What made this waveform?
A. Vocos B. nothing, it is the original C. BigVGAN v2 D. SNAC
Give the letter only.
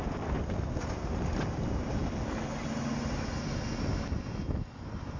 B